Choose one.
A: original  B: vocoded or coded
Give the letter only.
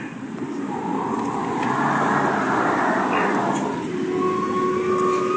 A